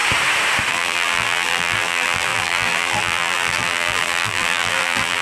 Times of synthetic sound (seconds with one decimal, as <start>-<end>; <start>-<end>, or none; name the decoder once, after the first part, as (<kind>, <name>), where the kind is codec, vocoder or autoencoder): 0.7-5.2 (vocoder, BigVGAN v2)